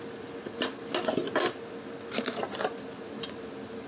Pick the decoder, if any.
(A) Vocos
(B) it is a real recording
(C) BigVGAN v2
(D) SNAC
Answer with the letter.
B